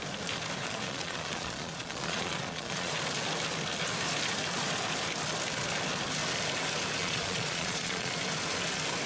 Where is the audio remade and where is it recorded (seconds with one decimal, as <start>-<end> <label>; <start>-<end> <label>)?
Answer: 0.0-0.6 recorded; 0.6-2.9 remade; 2.9-7.0 recorded; 7.0-8.1 remade; 8.1-9.1 recorded